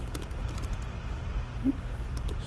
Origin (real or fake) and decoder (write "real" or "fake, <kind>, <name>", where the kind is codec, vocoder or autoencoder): real